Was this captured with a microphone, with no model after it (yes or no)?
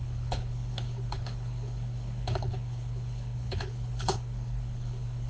no